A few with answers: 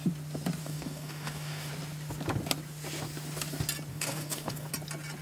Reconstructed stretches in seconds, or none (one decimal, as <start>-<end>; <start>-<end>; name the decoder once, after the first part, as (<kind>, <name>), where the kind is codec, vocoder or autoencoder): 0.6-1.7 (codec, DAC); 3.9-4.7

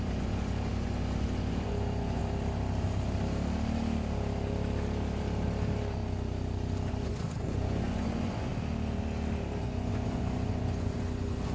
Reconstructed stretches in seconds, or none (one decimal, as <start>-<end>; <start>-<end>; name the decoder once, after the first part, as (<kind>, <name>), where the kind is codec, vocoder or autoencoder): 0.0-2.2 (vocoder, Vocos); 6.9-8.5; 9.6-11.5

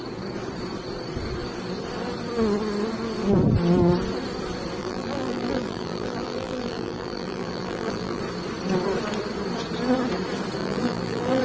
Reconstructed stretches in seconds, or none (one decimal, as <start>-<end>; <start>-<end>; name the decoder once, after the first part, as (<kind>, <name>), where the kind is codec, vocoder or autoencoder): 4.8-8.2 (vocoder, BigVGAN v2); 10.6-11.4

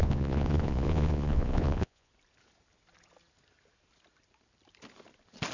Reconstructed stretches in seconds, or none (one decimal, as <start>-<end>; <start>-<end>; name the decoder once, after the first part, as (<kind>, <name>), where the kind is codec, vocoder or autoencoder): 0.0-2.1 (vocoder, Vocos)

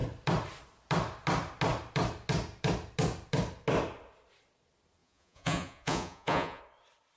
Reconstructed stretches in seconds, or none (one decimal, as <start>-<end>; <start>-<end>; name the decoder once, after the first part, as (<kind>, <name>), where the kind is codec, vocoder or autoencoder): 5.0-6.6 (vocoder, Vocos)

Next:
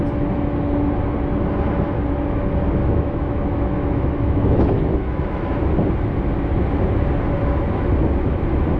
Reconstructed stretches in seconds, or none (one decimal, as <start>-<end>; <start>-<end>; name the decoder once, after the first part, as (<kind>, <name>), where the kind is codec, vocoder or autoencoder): 2.8-5.5 (autoencoder, DAC-VAE)